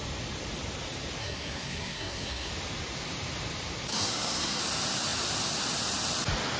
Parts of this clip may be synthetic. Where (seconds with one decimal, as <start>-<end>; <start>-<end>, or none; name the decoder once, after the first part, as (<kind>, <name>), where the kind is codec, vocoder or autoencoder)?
1.2-2.5 (codec, SNAC); 3.9-4.6